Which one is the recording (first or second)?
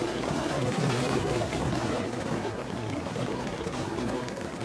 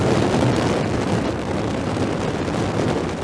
second